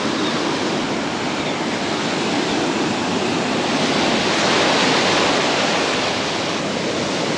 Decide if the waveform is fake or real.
real